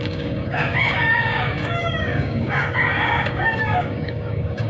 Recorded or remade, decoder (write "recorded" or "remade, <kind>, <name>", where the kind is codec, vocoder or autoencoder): remade, codec, DAC